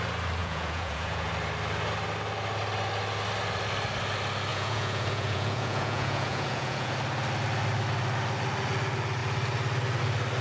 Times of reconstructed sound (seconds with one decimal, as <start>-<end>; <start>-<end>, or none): 0.4-1.3; 4.5-6.9